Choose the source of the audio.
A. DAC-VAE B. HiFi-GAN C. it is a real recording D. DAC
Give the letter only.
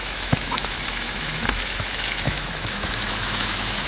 A